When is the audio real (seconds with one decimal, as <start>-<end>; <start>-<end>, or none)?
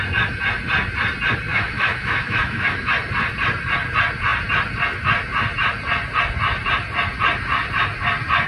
0.0-1.5; 2.9-8.5